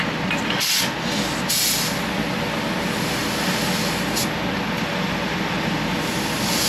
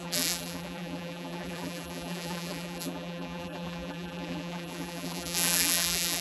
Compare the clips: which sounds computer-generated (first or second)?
second